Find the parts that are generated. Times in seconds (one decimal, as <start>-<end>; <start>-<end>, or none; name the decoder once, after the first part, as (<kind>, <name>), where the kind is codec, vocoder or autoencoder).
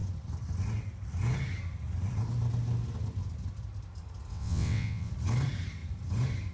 4.3-5.1 (vocoder, WaveNeXt)